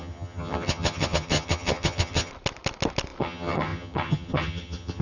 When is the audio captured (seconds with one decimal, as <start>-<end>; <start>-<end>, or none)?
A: 2.3-3.2